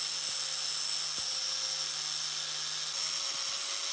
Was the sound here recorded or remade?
recorded